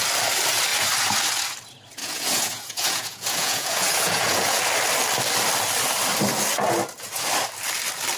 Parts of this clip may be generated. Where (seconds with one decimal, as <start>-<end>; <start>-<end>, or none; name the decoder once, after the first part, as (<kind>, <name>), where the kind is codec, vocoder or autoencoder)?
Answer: 2.0-4.6 (vocoder, Vocos)